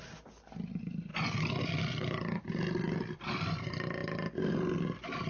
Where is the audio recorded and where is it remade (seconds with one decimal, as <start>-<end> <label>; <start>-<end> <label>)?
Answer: 0.0-5.3 recorded